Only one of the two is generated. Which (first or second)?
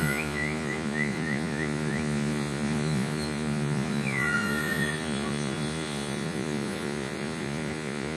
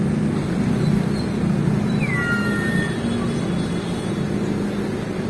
first